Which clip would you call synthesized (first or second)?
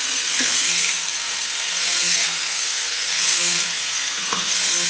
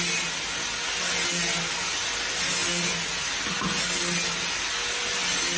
first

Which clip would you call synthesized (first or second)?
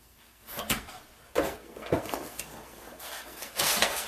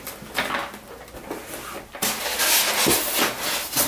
first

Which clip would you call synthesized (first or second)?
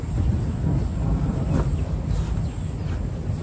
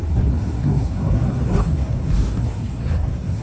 second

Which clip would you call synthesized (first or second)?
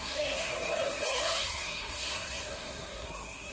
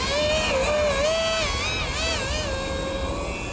first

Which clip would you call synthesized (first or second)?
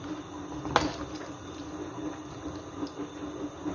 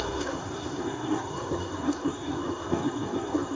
second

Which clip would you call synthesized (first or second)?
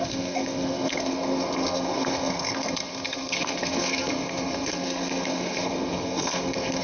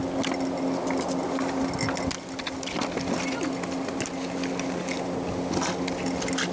first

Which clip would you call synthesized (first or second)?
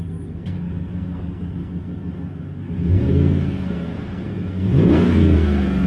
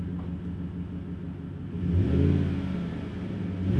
first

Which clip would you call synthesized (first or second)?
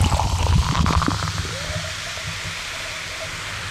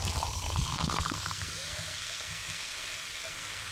second